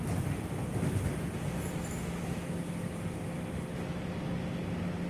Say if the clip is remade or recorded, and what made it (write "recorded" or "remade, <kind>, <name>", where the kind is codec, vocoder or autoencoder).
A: recorded